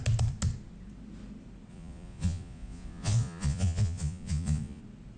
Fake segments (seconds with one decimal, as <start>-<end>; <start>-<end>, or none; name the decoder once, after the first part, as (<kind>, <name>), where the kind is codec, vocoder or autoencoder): 1.7-4.8 (vocoder, Vocos)